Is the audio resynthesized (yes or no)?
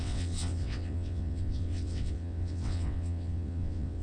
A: yes